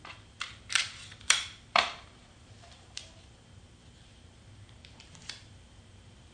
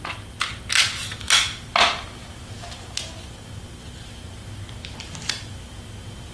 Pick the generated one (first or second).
first